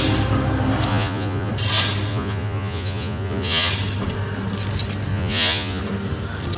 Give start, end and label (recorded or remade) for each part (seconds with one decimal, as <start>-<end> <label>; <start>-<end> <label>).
0.0-0.9 recorded; 0.9-1.5 remade; 1.5-2.1 recorded; 2.1-3.7 remade; 3.7-5.1 recorded; 5.1-5.8 remade; 5.8-6.6 recorded